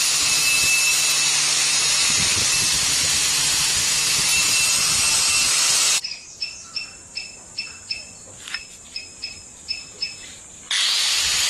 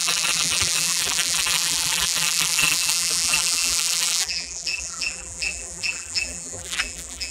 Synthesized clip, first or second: second